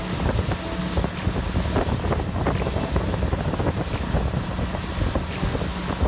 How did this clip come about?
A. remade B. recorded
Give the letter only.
B